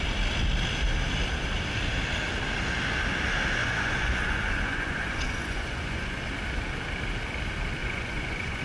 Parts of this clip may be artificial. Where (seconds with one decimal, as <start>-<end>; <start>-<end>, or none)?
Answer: 3.6-6.2; 7.8-8.6